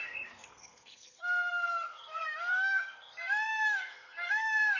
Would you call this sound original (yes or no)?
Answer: no